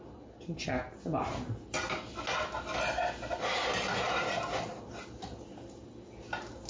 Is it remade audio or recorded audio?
recorded